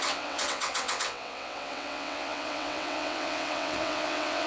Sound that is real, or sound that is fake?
fake